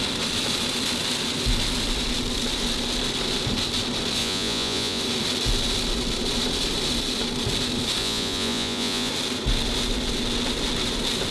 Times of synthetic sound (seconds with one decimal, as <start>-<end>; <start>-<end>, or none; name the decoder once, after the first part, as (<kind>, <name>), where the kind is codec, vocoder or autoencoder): 4.2-5.0 (vocoder, Vocos); 8.0-9.1